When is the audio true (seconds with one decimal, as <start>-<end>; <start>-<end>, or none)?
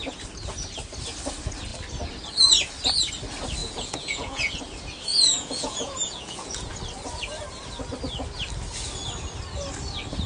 0.0-3.6; 4.6-5.1; 6.7-10.3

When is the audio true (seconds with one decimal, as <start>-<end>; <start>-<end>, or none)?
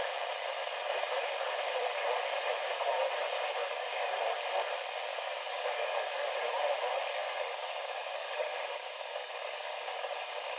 0.0-3.6; 4.2-5.1; 6.3-7.2